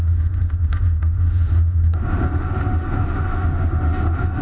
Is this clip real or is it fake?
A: fake